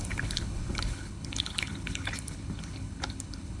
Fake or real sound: fake